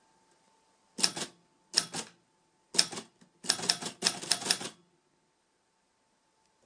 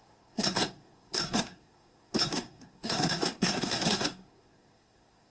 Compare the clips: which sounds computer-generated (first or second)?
second